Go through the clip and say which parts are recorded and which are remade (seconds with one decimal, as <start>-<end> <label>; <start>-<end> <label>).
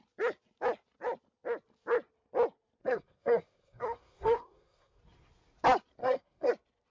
0.0-2.8 recorded; 2.8-5.0 remade; 5.0-6.0 recorded; 6.0-6.5 remade; 6.5-6.9 recorded